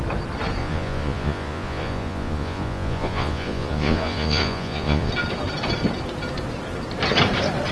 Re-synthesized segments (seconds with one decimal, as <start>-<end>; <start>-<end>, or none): 0.6-5.1